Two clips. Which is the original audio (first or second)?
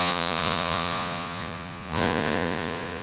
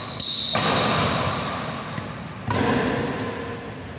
second